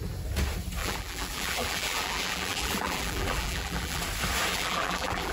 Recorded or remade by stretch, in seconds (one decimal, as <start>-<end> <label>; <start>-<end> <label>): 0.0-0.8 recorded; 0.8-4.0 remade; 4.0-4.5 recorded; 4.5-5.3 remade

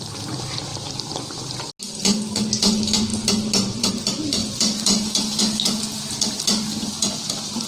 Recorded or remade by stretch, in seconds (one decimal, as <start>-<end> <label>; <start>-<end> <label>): 0.0-0.7 recorded; 0.7-1.7 remade; 1.7-7.7 recorded

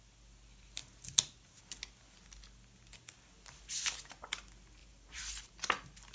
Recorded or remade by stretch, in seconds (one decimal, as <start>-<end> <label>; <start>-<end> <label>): 0.0-4.8 recorded; 4.8-5.5 remade; 5.5-6.1 recorded